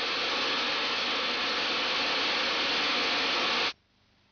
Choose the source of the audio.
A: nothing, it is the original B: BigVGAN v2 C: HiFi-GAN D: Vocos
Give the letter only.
A